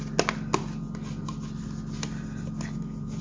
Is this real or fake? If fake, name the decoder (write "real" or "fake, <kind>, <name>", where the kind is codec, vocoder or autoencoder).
real